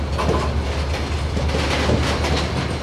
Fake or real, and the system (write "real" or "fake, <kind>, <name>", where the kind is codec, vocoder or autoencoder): real